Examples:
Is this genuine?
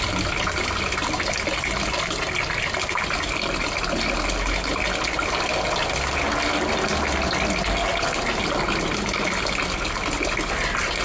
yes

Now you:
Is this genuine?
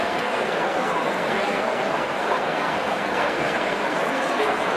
no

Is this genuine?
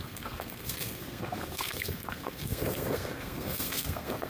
no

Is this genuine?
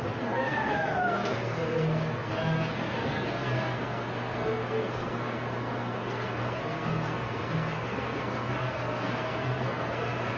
no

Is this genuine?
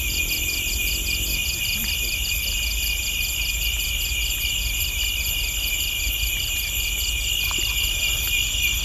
yes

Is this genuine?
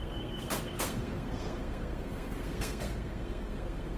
no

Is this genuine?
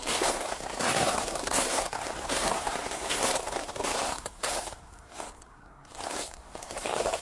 no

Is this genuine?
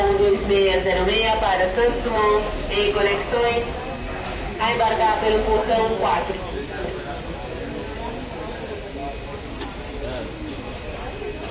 yes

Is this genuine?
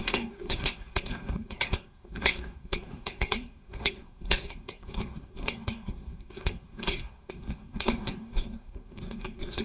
no